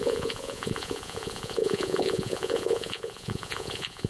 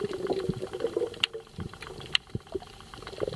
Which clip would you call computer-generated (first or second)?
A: first